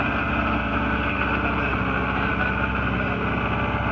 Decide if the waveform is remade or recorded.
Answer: recorded